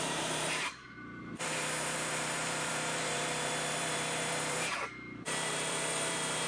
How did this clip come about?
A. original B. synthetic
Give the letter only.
B